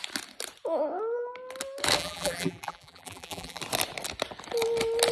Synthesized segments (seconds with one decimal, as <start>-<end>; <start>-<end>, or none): 2.0-3.6